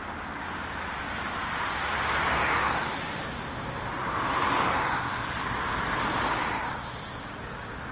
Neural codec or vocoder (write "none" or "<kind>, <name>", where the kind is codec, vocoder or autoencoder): none